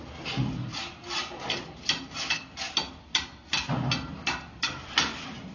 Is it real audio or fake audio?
real